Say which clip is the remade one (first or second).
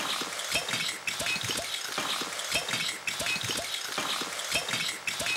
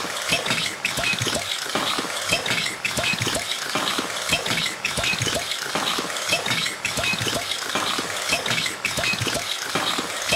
second